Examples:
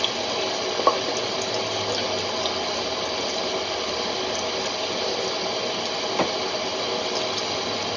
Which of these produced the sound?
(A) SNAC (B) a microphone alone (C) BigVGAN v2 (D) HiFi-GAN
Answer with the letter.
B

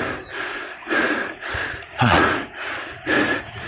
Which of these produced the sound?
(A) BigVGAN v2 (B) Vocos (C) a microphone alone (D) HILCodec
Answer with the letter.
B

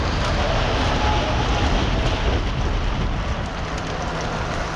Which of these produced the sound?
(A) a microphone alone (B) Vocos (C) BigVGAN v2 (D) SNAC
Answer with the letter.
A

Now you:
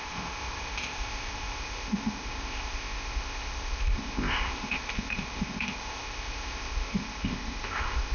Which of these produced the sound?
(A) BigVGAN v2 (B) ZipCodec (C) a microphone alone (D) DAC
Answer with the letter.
B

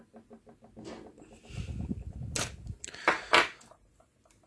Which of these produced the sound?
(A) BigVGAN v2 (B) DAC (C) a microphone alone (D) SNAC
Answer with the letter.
C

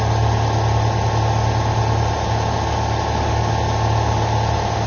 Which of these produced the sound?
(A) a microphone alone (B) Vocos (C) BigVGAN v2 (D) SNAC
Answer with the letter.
A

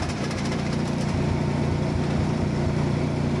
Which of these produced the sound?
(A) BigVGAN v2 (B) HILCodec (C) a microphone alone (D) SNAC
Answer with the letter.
A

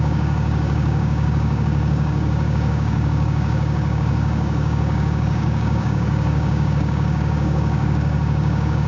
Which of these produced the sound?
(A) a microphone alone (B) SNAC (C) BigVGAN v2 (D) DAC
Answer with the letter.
D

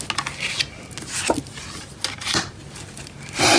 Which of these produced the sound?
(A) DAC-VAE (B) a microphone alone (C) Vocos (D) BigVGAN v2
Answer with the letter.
B